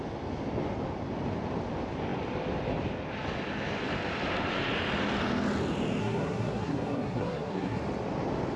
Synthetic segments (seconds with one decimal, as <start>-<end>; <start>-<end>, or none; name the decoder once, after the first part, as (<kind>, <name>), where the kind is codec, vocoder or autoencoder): 6.0-7.8 (codec, SNAC)

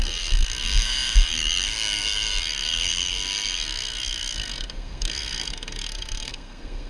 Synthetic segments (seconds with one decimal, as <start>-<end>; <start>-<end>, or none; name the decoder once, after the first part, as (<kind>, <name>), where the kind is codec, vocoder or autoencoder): 0.0-6.9 (codec, SNAC)

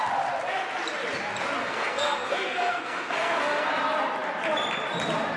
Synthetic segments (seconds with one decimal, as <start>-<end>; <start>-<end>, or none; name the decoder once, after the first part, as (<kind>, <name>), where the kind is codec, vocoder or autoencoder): 1.6-3.7 (codec, SNAC)